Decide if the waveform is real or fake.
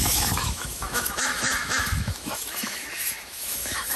fake